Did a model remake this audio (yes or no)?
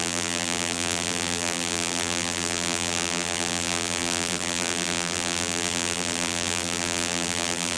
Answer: yes